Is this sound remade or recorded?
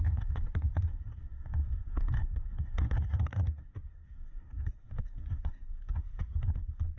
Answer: remade